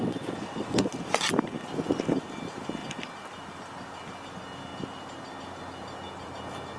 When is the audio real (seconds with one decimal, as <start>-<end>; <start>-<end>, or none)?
0.9-6.8